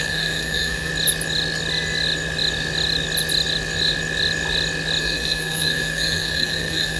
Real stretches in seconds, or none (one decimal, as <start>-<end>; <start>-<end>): 0.9-5.0